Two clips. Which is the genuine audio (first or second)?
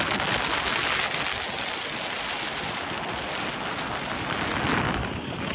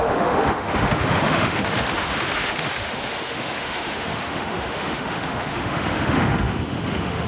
first